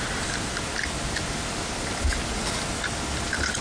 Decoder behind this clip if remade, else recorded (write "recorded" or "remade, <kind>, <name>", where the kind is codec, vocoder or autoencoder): recorded